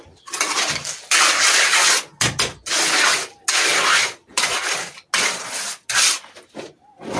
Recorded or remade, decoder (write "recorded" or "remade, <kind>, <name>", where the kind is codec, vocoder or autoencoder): recorded